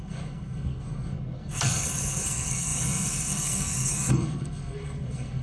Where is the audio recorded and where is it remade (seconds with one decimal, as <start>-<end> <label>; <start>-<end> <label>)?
0.0-5.4 remade